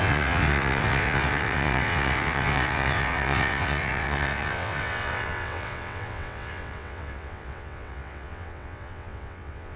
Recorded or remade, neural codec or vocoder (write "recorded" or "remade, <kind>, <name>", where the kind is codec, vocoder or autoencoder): remade, vocoder, WaveNeXt